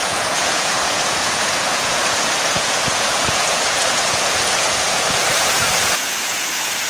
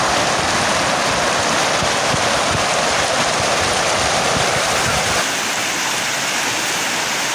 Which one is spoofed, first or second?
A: first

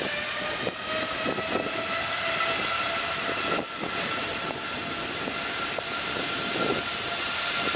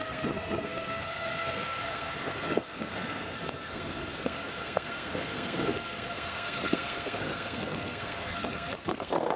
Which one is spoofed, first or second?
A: second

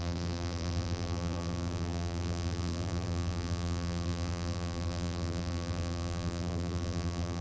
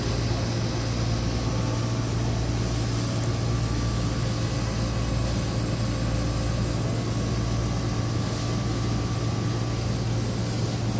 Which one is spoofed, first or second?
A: first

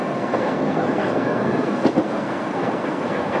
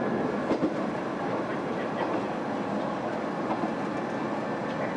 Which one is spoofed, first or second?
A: first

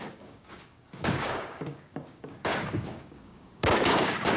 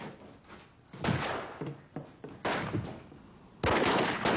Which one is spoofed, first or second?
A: first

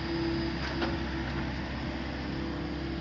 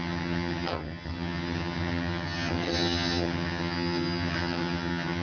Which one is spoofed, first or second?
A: second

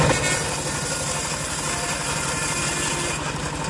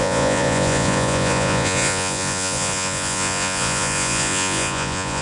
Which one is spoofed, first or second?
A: second